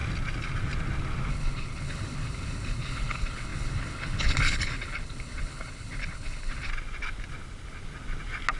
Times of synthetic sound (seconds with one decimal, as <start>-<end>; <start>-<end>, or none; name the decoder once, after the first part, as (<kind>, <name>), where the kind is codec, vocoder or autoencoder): 1.3-6.7 (codec, HILCodec)